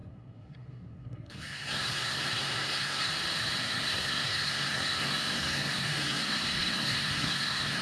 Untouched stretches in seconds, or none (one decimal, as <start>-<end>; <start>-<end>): 3.1-3.6